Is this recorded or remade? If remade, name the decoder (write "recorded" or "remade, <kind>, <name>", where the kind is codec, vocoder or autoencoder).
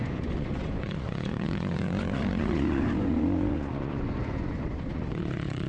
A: remade, vocoder, Vocos